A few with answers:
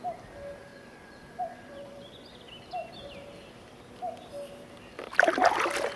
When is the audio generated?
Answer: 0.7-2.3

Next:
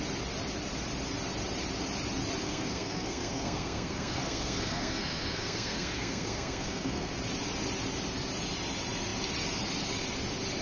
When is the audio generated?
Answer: 2.4-7.1

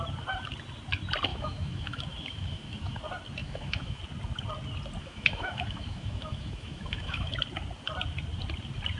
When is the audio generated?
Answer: 1.3-3.0; 3.4-4.0; 5.0-7.3